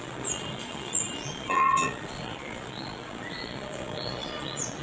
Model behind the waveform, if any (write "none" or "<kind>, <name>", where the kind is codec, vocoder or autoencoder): vocoder, Vocos